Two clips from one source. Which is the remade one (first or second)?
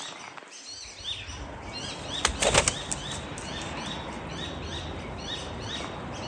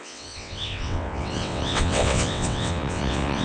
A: second